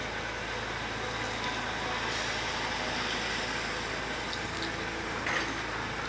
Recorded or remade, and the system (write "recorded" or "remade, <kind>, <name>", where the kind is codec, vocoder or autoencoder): recorded